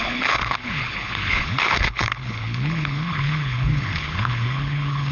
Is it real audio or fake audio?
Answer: fake